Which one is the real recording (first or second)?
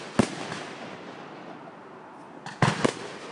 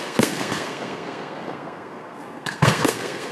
first